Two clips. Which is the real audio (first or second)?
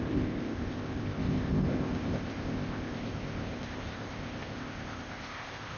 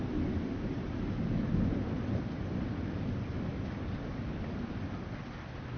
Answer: second